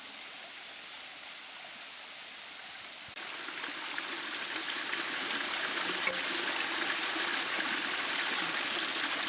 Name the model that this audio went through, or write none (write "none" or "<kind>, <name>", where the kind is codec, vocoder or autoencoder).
none